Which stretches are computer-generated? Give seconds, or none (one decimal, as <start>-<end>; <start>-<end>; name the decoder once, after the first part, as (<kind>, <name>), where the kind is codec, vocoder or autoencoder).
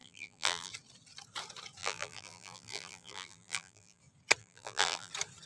0.0-0.7 (vocoder, BigVGAN v2); 1.8-4.0; 4.4-5.1